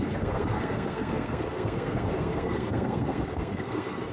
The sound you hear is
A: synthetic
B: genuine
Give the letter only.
A